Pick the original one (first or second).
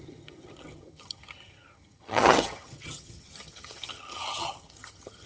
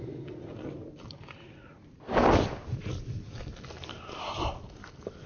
second